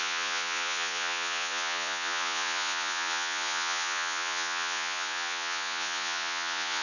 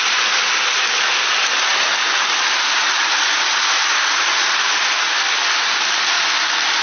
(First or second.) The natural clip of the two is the second